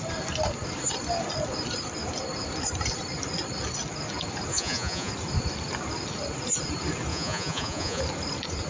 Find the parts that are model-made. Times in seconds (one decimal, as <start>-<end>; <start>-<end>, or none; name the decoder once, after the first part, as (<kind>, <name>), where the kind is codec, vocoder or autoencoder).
4.5-5.1 (vocoder, Vocos); 7.1-8.0